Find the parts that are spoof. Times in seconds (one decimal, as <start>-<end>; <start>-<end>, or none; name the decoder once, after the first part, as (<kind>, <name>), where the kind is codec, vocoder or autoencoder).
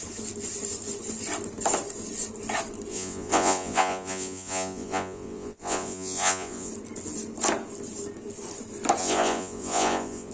2.9-6.7 (vocoder, Vocos); 9.0-10.3